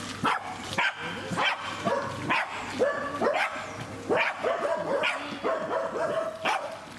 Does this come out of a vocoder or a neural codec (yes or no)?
no